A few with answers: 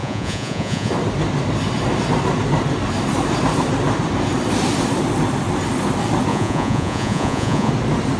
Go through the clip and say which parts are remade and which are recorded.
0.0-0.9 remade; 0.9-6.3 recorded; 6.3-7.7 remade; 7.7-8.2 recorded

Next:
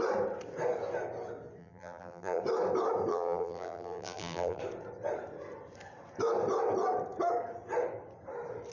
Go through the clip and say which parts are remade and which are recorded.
0.0-1.6 recorded; 1.6-2.4 remade; 2.4-3.1 recorded; 3.1-4.6 remade; 4.6-8.7 recorded

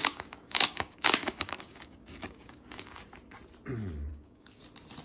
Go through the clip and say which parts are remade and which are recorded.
0.0-3.0 remade; 3.0-4.1 recorded; 4.1-4.6 remade; 4.6-5.0 recorded

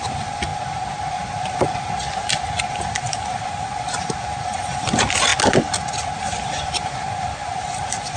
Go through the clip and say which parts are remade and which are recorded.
0.0-0.5 remade; 0.5-2.7 recorded; 2.7-5.3 remade; 5.3-6.2 recorded; 6.2-8.2 remade

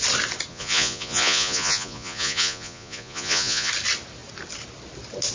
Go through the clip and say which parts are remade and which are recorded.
0.0-0.5 recorded; 0.5-3.7 remade; 3.7-5.3 recorded